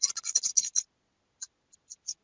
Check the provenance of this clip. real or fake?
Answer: real